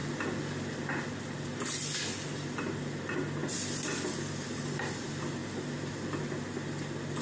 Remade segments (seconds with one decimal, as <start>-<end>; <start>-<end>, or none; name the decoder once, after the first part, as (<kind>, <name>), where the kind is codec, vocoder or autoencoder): none